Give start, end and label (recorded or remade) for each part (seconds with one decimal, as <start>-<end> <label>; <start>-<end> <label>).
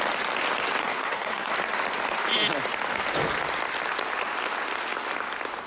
0.0-0.8 recorded; 0.8-1.5 remade; 1.5-5.7 recorded